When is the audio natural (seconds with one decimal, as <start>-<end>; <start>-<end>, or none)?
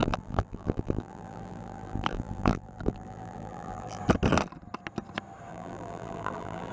4.0-5.5